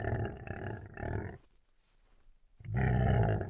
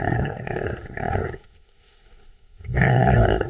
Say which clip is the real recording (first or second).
first